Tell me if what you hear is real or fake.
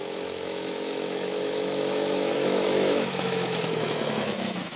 fake